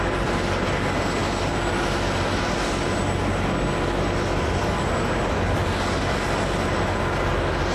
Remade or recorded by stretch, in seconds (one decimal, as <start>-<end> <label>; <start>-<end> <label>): 0.0-7.7 recorded